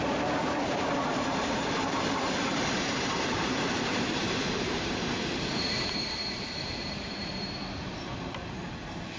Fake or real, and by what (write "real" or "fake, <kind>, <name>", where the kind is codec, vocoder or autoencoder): fake, vocoder, BigVGAN v2